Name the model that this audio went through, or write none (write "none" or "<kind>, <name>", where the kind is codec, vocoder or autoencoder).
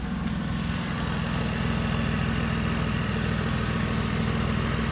none